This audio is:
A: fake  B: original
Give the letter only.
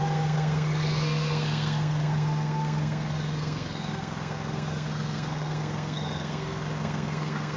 A